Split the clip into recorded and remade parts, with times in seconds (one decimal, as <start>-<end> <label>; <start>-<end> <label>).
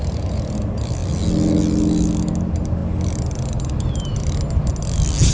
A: 0.0-5.3 recorded